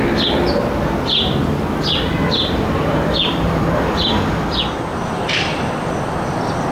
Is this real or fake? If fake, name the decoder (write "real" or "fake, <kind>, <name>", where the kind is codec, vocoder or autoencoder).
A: fake, vocoder, BigVGAN v2